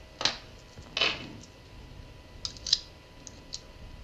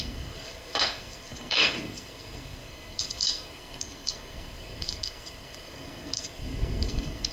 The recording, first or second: first